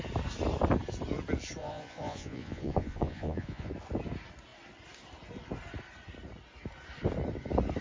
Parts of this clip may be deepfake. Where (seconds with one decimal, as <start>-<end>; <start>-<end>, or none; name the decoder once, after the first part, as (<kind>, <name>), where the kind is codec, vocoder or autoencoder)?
1.6-3.7 (vocoder, Vocos)